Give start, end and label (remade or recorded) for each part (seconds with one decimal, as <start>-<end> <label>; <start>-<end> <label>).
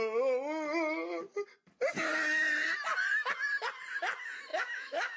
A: 0.0-4.5 recorded; 4.5-5.2 remade